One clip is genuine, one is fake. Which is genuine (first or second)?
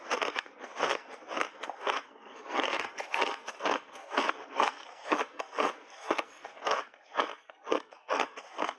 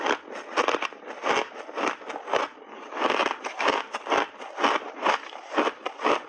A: second